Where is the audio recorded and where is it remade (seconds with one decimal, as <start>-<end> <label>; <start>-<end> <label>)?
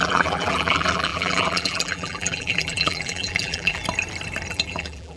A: 0.0-3.8 remade; 3.8-4.5 recorded; 4.5-5.2 remade